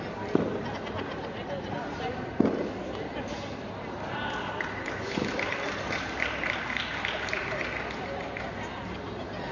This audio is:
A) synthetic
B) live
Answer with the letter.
B